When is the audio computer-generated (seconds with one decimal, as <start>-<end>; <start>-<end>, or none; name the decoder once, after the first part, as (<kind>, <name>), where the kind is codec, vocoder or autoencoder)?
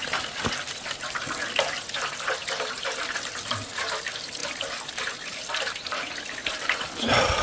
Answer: none